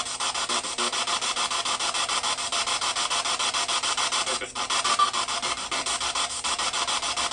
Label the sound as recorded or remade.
recorded